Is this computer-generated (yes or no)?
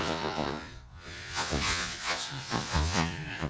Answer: yes